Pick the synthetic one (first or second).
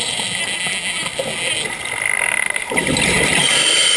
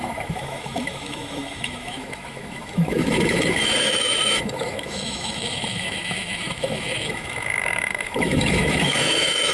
second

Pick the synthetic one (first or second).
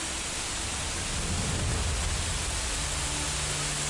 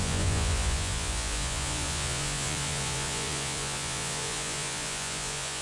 second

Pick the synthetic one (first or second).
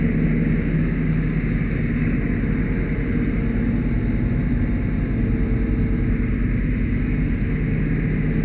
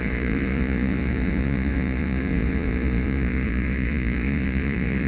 second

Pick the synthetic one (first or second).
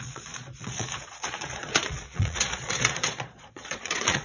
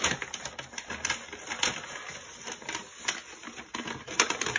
first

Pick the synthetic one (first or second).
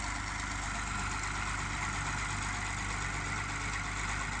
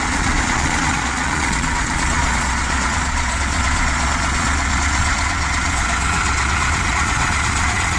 second